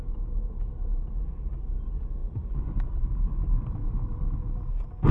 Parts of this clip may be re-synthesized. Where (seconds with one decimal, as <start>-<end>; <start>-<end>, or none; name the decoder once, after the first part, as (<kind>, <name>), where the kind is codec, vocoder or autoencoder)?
2.2-3.7 (vocoder, BigVGAN v2)